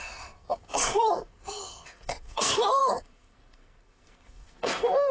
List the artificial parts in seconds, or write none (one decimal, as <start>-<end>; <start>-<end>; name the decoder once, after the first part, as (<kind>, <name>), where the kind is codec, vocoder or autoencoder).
0.0-5.1 (codec, SNAC)